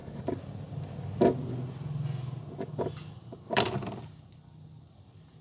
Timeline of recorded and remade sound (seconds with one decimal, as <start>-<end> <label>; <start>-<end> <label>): 0.0-5.4 recorded